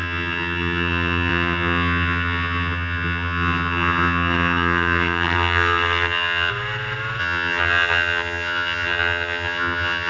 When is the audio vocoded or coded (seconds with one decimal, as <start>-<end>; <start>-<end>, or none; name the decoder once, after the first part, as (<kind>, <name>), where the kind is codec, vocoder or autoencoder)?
0.0-6.5 (vocoder, HiFi-GAN); 7.2-10.1